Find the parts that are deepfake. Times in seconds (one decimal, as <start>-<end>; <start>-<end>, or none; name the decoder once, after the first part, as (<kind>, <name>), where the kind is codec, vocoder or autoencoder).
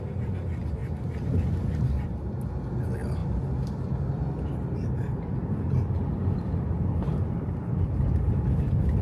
none